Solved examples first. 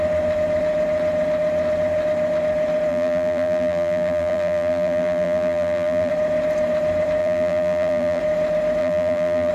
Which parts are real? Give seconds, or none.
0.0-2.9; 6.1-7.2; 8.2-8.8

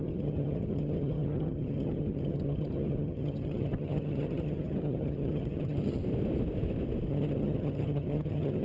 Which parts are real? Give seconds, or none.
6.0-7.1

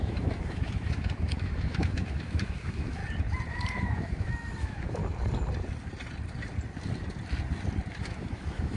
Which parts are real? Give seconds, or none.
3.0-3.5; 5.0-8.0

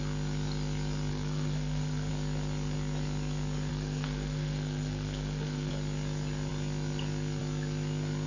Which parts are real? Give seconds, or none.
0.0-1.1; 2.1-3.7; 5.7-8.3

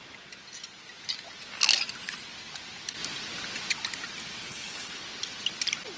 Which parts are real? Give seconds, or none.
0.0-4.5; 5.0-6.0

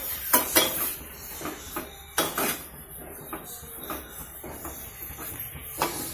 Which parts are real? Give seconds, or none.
1.4-6.1